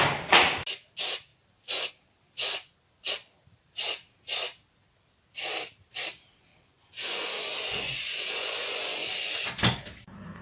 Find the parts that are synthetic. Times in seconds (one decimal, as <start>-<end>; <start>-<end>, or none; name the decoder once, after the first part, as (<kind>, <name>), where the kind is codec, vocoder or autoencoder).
6.5-9.1 (vocoder, Vocos)